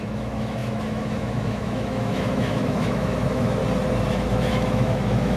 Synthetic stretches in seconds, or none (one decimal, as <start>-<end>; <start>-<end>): 0.0-3.6; 4.1-5.4

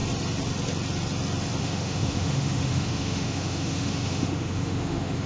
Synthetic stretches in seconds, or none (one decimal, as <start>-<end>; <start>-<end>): 1.6-5.3

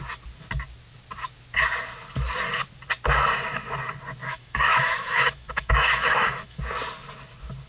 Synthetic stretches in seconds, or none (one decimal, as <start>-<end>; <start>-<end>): 4.2-6.6

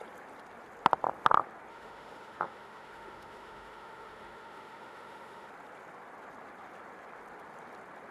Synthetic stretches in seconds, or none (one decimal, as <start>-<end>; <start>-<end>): 1.7-5.5